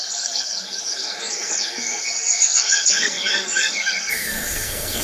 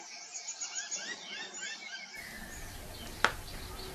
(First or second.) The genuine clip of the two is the second